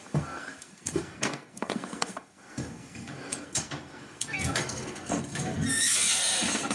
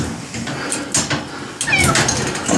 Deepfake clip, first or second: first